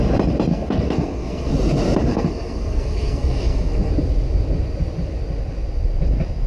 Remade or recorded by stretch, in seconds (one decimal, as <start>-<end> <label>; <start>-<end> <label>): 0.0-0.5 recorded; 0.5-1.5 remade; 1.5-2.1 recorded; 2.1-3.9 remade; 3.9-6.5 recorded